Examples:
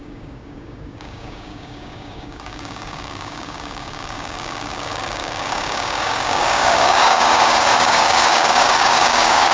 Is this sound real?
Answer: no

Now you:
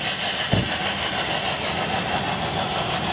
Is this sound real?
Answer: yes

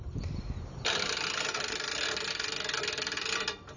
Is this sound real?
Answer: yes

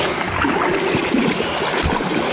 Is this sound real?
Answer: yes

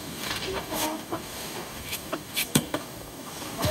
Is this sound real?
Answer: no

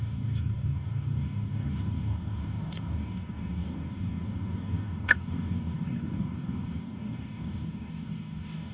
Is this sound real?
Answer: no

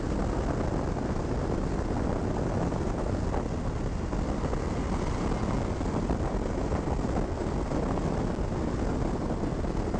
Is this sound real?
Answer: yes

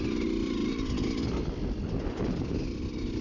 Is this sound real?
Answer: yes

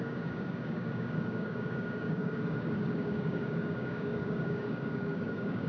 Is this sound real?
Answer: no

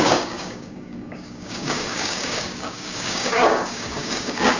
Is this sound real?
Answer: no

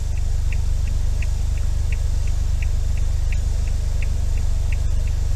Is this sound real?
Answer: yes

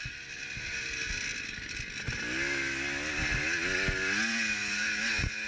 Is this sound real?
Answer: yes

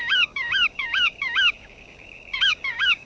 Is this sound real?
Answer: no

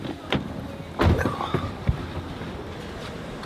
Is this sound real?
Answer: yes